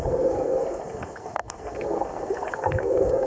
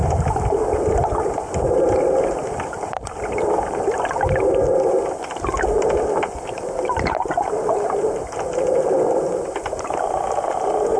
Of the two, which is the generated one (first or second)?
first